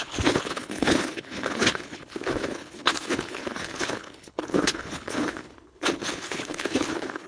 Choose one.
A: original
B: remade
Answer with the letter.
B